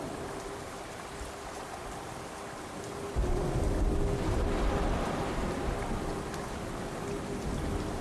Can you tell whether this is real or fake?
real